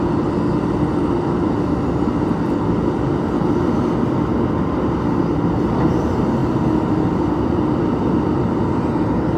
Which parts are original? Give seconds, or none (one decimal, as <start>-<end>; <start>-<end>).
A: 0.0-9.4